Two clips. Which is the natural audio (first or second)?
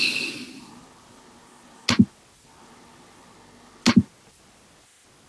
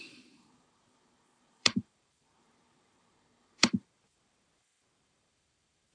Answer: first